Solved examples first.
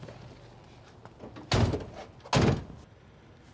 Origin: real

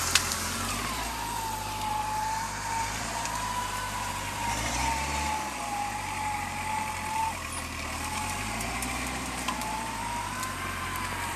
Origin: fake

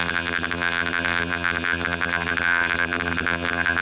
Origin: fake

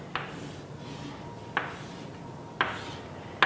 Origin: real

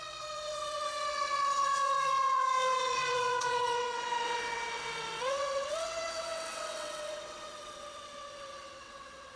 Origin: fake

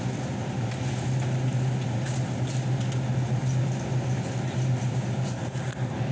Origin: real